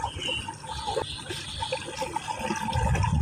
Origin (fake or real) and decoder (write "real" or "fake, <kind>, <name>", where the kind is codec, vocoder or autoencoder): real